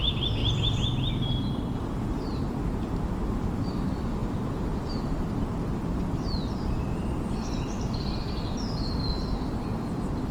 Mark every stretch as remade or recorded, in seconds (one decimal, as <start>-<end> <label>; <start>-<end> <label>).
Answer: 0.0-10.3 recorded